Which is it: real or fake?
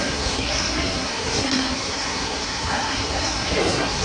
fake